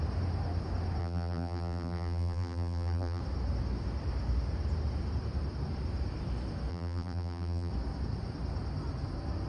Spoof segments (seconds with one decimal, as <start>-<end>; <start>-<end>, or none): 1.0-3.2; 6.7-7.7